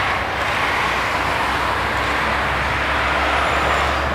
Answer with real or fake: real